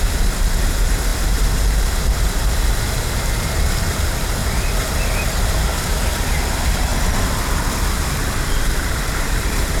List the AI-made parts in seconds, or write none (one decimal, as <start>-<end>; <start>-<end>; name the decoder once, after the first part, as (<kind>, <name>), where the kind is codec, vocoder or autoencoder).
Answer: 0.0-4.4 (vocoder, BigVGAN v2); 6.1-6.9; 7.9-9.8